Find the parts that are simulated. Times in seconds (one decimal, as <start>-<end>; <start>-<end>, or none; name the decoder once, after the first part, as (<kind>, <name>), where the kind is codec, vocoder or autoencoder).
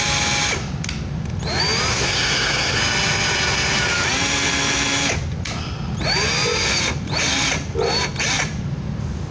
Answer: 1.9-2.8 (codec, SNAC)